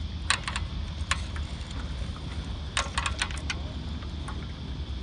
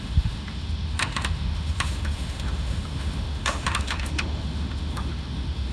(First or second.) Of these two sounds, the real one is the first